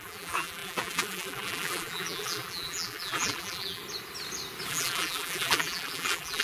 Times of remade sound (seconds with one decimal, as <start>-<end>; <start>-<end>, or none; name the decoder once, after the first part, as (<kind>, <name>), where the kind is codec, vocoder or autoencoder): 0.0-3.8 (vocoder, BigVGAN v2); 4.7-6.4